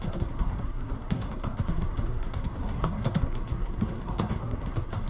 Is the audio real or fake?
fake